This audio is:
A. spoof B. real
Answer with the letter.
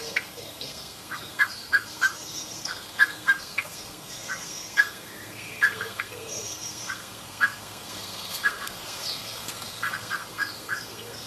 A